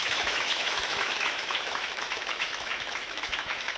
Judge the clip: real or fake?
fake